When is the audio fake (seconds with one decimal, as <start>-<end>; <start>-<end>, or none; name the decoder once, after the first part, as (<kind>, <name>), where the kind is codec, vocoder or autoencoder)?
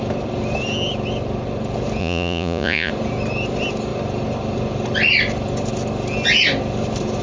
2.0-2.9 (vocoder, Vocos)